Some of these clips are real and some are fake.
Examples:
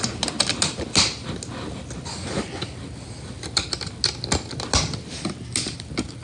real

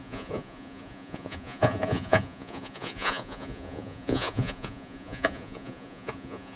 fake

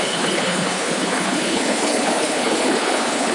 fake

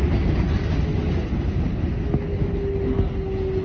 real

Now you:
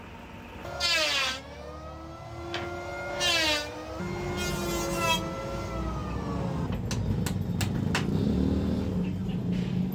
real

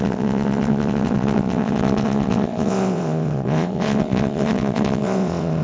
fake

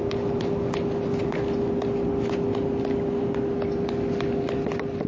real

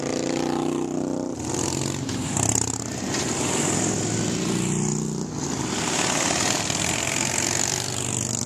real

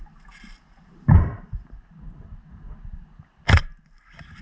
real